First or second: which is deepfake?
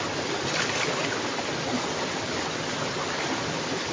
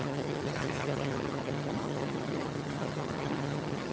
second